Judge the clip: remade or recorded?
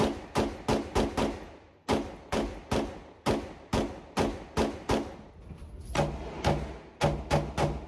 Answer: recorded